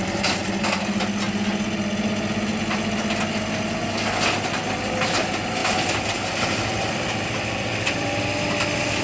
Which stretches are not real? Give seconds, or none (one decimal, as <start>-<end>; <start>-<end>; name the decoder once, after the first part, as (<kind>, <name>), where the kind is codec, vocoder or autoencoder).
0.4-1.2 (vocoder, BigVGAN v2); 5.6-8.2